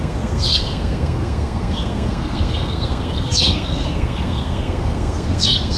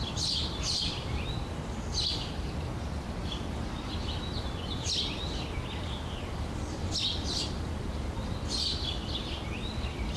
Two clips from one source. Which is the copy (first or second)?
first